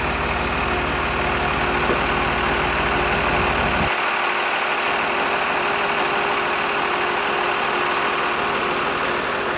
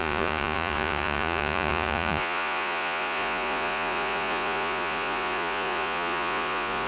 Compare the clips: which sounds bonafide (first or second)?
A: first